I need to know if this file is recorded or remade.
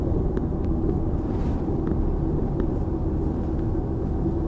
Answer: recorded